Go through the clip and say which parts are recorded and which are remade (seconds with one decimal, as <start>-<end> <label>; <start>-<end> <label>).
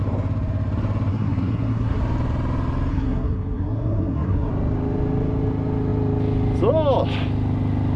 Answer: 0.0-1.1 recorded; 1.1-2.0 remade; 2.0-2.9 recorded; 2.9-4.5 remade; 4.5-8.0 recorded